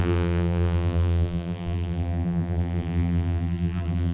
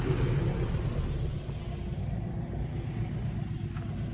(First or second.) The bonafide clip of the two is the second